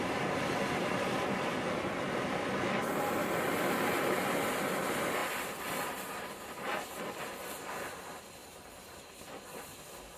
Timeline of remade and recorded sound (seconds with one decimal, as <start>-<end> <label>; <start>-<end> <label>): 0.0-10.2 recorded